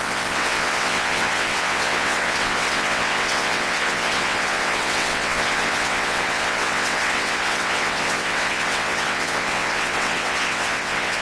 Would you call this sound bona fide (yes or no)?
no